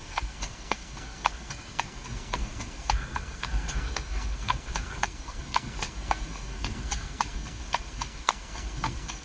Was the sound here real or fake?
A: fake